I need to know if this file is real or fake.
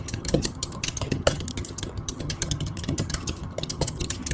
fake